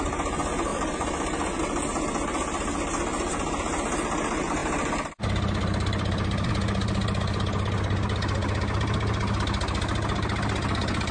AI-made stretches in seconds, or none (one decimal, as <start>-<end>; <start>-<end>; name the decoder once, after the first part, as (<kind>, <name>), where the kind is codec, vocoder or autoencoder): 0.7-1.6 (vocoder, BigVGAN v2); 4.6-6.5